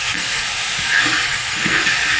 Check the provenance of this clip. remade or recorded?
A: remade